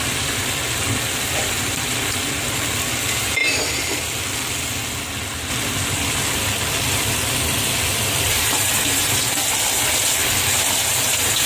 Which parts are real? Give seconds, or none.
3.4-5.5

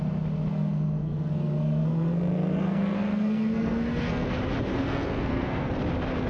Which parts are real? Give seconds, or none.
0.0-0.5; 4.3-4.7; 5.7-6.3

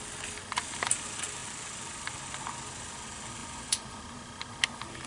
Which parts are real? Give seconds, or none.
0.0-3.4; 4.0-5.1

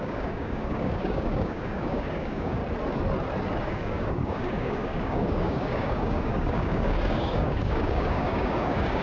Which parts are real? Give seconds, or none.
2.6-3.6

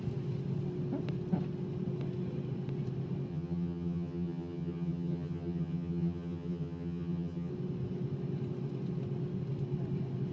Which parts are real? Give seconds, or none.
0.0-3.3; 7.5-10.3